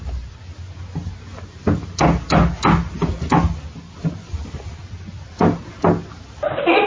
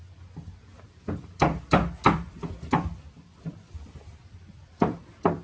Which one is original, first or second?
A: first